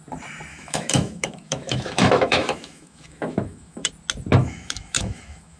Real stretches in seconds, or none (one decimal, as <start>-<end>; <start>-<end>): 0.0-0.5; 3.9-4.4